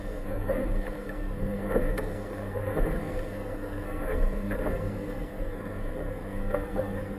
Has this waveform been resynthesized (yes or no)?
yes